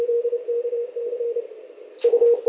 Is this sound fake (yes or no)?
no